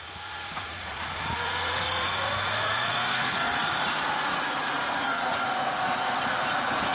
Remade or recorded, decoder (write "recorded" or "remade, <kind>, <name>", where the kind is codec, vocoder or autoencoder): remade, vocoder, Vocos